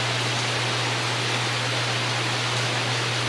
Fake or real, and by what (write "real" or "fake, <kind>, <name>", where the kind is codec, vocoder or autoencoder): real